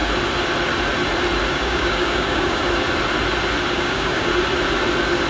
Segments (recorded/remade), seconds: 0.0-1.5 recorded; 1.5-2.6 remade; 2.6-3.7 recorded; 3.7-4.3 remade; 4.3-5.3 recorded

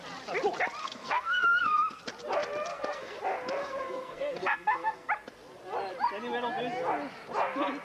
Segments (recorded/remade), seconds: 0.0-0.8 recorded; 0.8-2.0 remade; 2.0-2.7 recorded; 2.7-3.2 remade; 3.2-3.6 recorded; 3.6-5.1 remade; 5.1-7.8 recorded

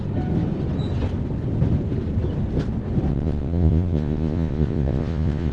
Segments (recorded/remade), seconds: 0.0-3.1 recorded; 3.1-5.5 remade

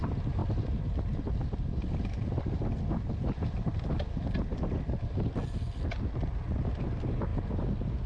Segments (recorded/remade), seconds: 0.0-8.1 recorded

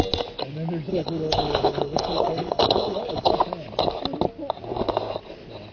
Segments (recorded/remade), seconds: 0.0-0.9 recorded; 0.9-3.3 remade; 3.3-5.7 recorded

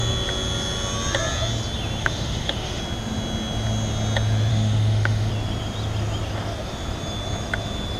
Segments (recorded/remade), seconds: 0.0-2.0 recorded; 2.0-2.8 remade; 2.8-4.5 recorded; 4.5-5.3 remade; 5.3-8.0 recorded